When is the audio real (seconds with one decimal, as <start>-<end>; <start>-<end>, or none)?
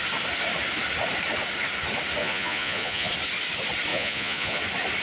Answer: 0.0-2.2; 3.1-3.9; 4.6-5.0